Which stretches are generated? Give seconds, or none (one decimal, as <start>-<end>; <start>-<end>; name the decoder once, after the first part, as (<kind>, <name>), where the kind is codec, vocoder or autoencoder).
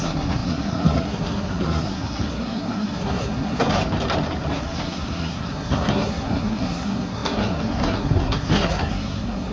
0.0-3.8 (codec, SNAC); 4.5-9.5